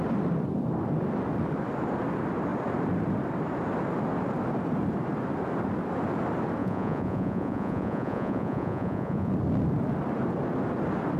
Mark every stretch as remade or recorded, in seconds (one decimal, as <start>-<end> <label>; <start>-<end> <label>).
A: 0.0-6.6 recorded; 6.6-9.3 remade; 9.3-11.2 recorded